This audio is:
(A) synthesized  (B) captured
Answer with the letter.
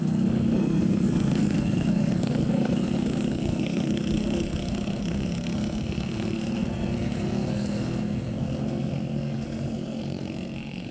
A